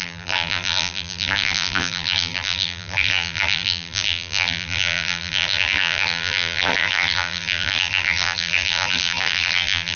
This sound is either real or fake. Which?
fake